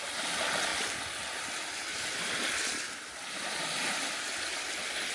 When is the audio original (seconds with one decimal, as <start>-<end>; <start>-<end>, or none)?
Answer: 0.0-0.7; 3.8-5.1

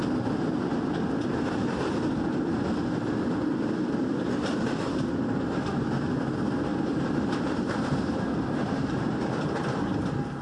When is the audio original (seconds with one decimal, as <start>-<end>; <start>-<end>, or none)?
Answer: 0.0-6.7; 9.4-10.4

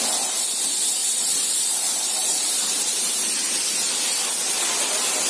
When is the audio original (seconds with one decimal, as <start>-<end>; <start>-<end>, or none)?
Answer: 0.0-1.0; 4.2-5.3

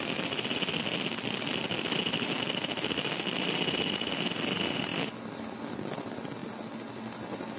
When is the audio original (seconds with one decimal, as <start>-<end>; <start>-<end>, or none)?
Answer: 4.9-5.7; 6.4-7.6

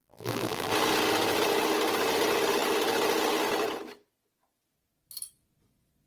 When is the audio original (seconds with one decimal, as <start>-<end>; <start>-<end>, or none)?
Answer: 0.7-6.1

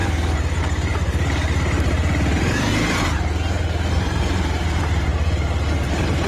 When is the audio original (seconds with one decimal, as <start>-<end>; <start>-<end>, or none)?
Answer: 0.0-0.6; 2.7-3.9; 5.1-5.7

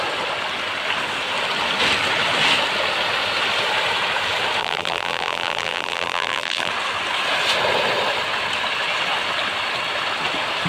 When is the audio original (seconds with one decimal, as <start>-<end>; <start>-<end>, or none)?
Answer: 0.0-4.6; 6.7-10.7

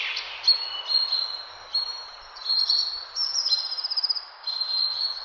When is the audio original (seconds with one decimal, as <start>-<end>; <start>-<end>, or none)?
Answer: 0.0-1.7; 4.8-5.2